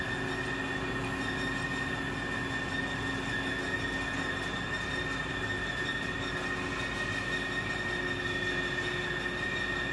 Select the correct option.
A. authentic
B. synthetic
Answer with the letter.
A